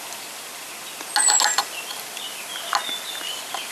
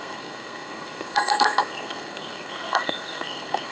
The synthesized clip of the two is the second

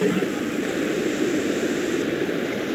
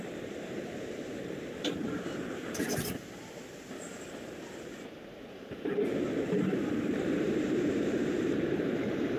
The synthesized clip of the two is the second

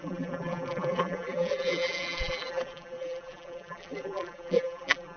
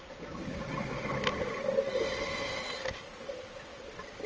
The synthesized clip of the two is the first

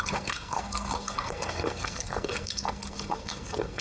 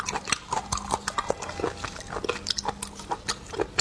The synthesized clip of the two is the first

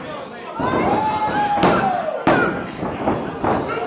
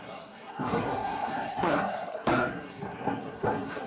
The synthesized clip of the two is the second